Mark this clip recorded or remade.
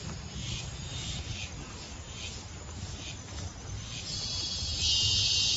recorded